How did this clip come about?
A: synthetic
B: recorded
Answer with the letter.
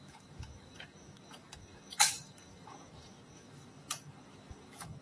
A